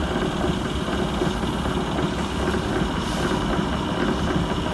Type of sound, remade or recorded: recorded